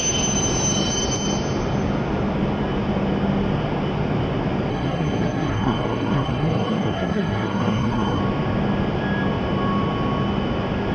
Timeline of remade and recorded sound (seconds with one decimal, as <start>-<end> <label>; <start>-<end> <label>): 0.0-4.7 recorded; 4.7-8.2 remade; 8.2-10.9 recorded